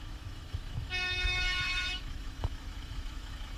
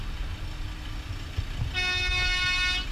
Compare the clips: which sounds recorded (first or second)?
second